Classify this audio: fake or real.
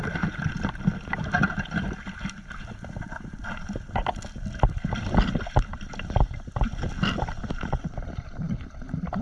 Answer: real